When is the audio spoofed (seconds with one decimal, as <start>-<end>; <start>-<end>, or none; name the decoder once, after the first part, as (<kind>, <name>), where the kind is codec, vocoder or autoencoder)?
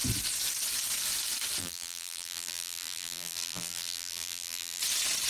1.6-4.8 (vocoder, BigVGAN v2)